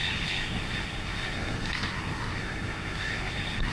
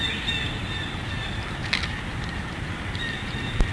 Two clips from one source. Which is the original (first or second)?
second